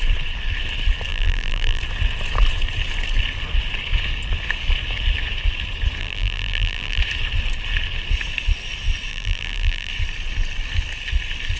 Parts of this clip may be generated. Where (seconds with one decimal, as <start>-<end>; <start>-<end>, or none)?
1.1-1.8; 6.0-7.0; 9.1-9.9

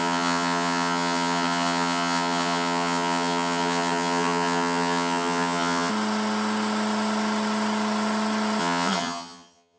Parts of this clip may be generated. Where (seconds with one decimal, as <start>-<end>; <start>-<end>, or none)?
0.0-5.9; 8.6-9.8

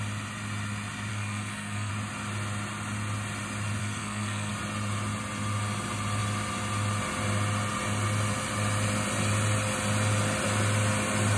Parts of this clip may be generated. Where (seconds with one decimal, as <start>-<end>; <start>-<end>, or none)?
1.1-1.9; 3.8-4.5

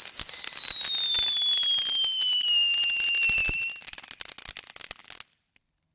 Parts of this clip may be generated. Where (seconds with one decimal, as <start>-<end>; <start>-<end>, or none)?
none